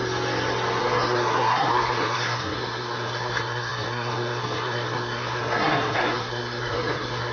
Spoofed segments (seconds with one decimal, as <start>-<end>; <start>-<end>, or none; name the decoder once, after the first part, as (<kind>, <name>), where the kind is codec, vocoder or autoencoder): 0.8-7.3 (codec, SNAC)

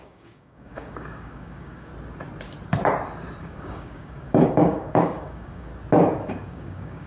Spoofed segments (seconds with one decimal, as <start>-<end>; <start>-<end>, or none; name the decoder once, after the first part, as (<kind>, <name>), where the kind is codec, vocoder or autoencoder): 0.0-1.9 (codec, DAC); 3.4-5.7; 6.3-7.1

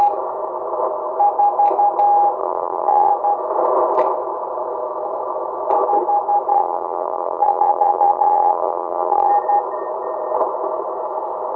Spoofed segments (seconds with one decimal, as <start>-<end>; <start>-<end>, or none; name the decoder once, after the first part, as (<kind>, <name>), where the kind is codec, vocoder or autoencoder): 2.4-3.1 (vocoder, BigVGAN v2); 6.5-9.3

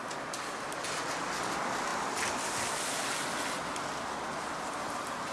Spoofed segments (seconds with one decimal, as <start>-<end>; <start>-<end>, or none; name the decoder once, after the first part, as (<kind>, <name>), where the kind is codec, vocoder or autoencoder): none

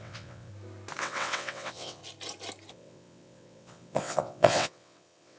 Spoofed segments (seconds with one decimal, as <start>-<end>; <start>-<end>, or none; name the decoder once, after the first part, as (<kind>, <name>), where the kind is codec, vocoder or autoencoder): 0.0-0.5 (vocoder, WaveNeXt); 1.0-2.0; 2.7-5.4

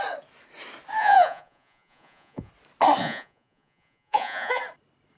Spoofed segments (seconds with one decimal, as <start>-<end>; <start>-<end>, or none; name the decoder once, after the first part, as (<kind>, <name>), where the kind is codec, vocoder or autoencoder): 1.0-2.5 (vocoder, Vocos); 3.0-4.6

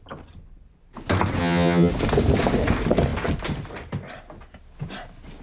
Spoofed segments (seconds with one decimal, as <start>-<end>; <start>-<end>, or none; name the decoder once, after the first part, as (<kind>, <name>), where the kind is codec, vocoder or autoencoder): 1.4-1.9 (vocoder, HiFi-GAN)